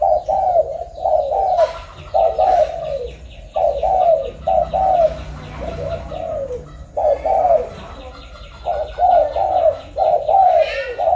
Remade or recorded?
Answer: recorded